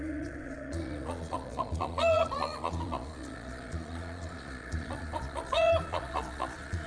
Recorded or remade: remade